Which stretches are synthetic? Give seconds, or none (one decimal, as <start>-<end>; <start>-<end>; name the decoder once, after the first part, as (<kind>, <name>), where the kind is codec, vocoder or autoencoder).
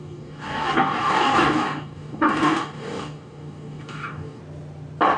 0.0-4.4 (codec, DAC)